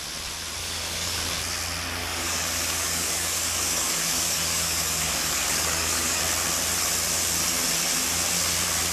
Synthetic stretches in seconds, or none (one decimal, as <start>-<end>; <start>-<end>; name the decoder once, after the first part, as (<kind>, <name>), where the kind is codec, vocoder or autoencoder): 0.6-1.2 (codec, DAC); 2.0-6.2